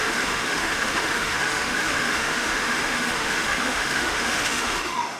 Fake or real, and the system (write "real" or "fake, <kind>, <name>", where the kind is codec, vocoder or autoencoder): fake, autoencoder, DAC-VAE